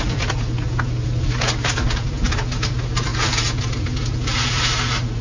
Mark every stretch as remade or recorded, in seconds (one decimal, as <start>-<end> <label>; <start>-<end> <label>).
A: 0.0-5.2 recorded